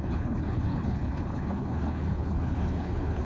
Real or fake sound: fake